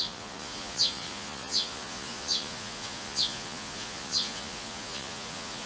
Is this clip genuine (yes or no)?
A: no